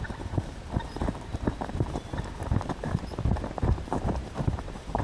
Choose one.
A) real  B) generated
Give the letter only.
B